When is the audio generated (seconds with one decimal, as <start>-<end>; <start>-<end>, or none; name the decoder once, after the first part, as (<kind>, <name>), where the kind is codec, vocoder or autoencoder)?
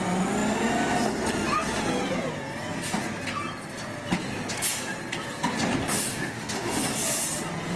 6.1-6.8 (autoencoder, DAC-VAE)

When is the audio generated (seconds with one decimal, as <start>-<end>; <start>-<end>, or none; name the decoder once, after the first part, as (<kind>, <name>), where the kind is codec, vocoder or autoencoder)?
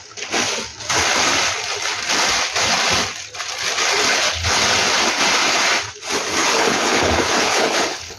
4.1-4.6 (codec, HILCodec); 6.4-8.2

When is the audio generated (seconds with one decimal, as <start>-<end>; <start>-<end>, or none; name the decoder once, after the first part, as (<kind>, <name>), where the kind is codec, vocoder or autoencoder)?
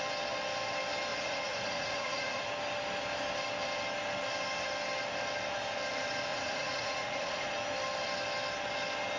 1.1-2.4 (vocoder, Vocos); 6.3-7.5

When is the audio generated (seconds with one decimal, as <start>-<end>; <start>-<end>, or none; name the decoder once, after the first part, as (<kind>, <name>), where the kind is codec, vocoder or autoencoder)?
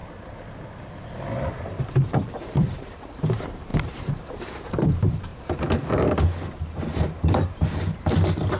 1.8-8.6 (vocoder, BigVGAN v2)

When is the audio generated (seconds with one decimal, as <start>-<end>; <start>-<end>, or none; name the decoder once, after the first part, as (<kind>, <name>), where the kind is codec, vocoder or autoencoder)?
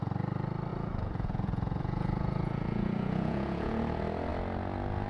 0.7-3.8 (vocoder, Vocos)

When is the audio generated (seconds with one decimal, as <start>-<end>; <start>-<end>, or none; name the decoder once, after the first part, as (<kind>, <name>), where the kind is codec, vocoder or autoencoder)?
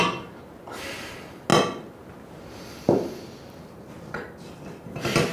none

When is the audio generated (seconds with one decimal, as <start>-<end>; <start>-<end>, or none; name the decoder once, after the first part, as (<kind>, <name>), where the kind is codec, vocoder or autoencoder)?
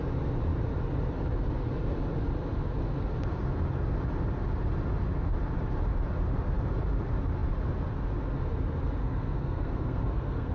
9.0-10.5 (codec, SNAC)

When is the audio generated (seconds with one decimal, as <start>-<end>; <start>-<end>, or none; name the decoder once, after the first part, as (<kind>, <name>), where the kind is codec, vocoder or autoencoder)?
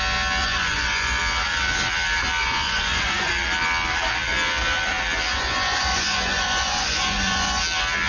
0.4-1.2 (vocoder, Vocos); 2.4-3.3; 5.3-7.6